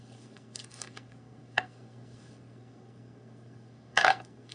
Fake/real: fake